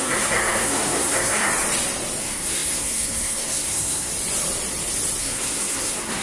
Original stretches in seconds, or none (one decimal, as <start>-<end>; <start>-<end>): 1.5-2.2; 4.1-5.2